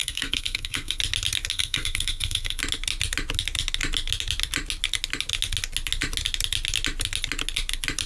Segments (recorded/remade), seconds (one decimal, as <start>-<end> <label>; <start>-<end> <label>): 0.0-1.0 remade; 1.0-1.5 recorded; 1.5-2.6 remade; 2.6-8.1 recorded